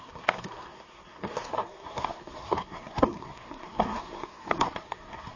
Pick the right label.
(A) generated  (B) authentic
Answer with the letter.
A